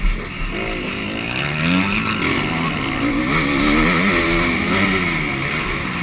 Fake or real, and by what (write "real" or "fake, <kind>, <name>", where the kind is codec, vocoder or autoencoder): real